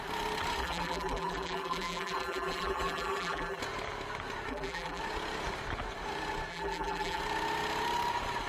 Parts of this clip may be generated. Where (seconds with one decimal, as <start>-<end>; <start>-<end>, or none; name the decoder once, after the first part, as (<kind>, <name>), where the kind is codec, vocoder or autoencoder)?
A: 0.6-3.6 (vocoder, BigVGAN v2); 4.5-5.0; 6.5-7.2